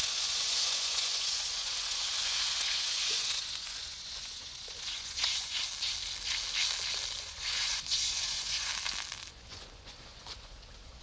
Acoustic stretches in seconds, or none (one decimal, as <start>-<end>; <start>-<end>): 5.6-7.2; 8.7-9.3

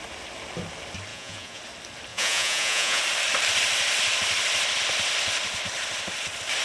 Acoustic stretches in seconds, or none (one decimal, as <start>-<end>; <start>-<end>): 0.0-1.1; 1.6-2.1; 3.0-6.6

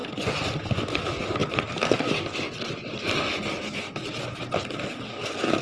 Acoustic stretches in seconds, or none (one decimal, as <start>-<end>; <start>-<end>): 0.7-5.6